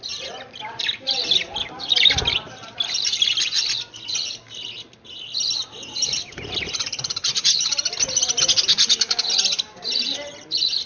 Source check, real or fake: real